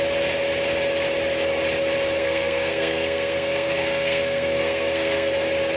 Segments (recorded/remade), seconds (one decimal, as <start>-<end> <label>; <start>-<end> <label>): 0.0-2.2 recorded; 2.2-5.3 remade; 5.3-5.8 recorded